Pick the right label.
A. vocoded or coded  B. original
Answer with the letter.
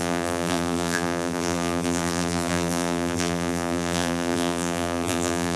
A